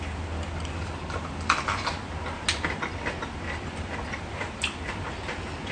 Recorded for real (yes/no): yes